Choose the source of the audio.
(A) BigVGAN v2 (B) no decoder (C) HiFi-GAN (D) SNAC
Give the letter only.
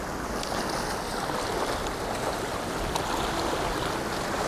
B